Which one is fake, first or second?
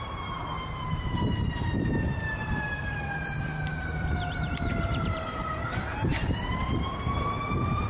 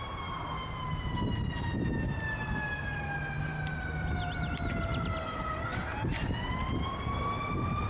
first